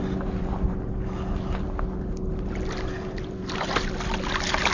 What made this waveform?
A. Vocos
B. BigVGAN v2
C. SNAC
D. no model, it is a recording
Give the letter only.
D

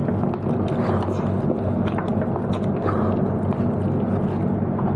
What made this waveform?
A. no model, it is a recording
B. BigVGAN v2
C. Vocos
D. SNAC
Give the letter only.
A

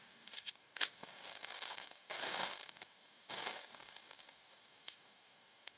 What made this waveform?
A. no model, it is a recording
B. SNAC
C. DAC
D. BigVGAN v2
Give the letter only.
C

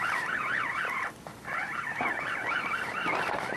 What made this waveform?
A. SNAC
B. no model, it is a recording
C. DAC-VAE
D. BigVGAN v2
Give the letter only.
B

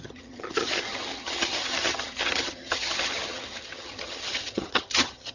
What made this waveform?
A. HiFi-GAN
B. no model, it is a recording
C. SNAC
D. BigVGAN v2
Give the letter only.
A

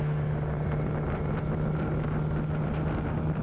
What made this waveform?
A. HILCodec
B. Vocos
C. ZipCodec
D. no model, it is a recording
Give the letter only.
D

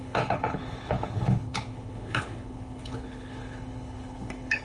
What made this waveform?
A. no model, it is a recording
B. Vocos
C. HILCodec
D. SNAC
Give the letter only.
C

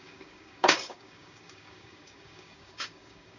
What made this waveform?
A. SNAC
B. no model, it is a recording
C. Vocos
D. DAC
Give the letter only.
D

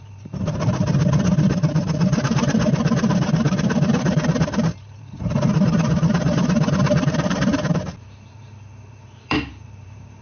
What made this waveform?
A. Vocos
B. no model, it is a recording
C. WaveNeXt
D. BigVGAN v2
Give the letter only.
D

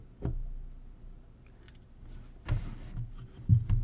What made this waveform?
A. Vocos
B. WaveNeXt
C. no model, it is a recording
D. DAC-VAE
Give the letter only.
C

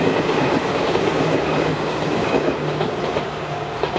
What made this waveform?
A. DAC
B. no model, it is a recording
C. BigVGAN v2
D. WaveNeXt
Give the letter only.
A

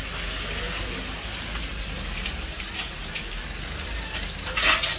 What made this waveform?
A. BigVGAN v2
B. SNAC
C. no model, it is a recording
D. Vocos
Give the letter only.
C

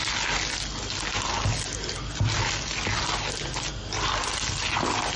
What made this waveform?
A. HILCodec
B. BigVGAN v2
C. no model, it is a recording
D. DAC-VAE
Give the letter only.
C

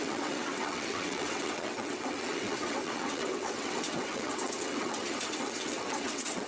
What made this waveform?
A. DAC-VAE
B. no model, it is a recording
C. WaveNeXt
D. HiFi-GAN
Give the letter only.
C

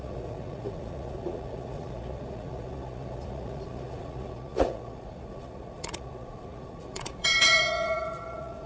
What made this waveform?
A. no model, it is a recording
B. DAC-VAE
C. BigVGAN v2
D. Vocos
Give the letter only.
D